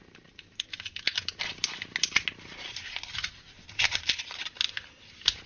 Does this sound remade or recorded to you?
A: recorded